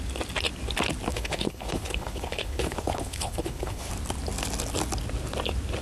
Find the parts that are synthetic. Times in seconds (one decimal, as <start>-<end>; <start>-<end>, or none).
1.1-3.9